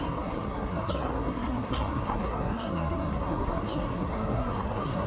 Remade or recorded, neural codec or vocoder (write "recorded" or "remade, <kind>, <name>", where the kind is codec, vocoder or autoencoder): remade, codec, SNAC